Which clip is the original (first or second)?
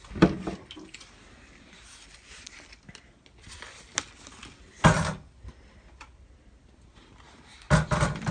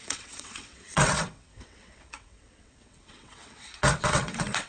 first